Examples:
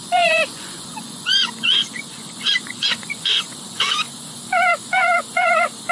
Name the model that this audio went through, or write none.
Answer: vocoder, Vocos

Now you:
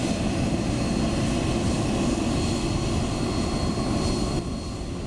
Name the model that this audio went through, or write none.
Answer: none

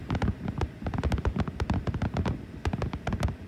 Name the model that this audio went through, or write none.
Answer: none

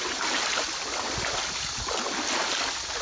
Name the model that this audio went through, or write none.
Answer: none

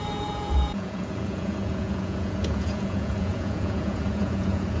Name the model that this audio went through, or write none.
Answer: vocoder, Vocos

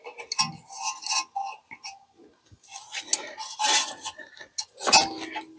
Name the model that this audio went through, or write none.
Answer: none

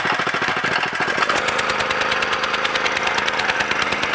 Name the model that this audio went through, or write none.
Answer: none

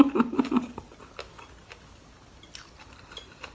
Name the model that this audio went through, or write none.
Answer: none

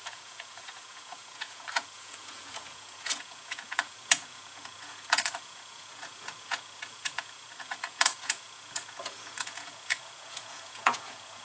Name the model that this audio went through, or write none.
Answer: vocoder, Vocos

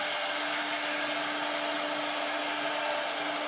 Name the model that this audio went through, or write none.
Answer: none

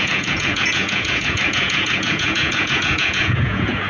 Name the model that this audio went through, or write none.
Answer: vocoder, Vocos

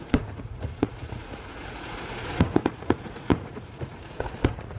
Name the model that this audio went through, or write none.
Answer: vocoder, Vocos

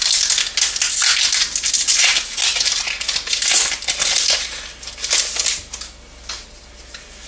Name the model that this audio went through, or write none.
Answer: none